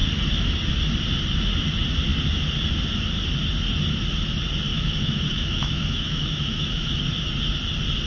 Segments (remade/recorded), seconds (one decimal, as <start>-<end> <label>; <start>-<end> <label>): 0.0-4.7 recorded; 4.7-7.0 remade; 7.0-8.1 recorded